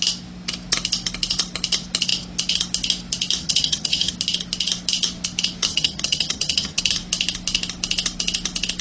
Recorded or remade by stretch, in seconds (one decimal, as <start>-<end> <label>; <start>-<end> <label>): 0.0-3.4 recorded; 3.4-4.1 remade; 4.1-5.7 recorded; 5.7-6.8 remade; 6.8-8.8 recorded